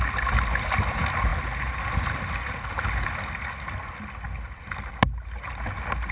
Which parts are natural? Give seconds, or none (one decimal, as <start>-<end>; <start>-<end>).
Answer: 0.0-6.1